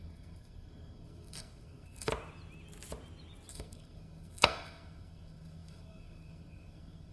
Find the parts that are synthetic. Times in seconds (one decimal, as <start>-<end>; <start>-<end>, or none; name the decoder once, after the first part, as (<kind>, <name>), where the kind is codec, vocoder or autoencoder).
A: 0.0-2.1 (codec, SNAC); 3.5-7.1